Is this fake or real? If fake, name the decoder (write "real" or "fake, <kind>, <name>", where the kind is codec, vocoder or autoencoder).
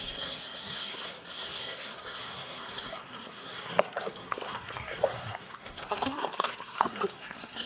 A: fake, codec, SNAC